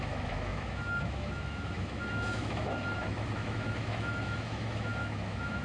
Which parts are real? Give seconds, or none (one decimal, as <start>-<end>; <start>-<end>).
none